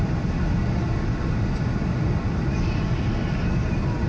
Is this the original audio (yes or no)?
yes